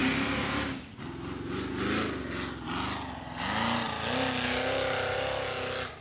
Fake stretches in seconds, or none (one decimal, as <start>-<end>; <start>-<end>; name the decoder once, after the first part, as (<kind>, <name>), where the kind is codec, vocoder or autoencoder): none